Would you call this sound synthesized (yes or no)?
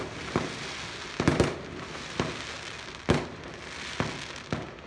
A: no